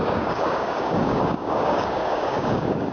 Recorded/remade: remade